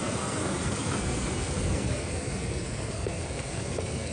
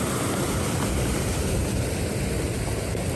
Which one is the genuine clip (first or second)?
second